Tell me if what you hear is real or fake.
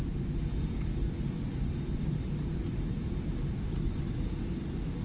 real